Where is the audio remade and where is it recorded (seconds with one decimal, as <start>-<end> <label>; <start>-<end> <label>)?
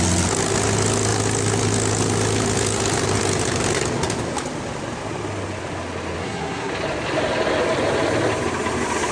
0.0-6.2 recorded; 6.2-6.7 remade; 6.7-9.1 recorded